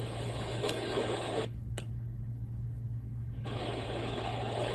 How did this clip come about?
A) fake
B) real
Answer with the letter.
A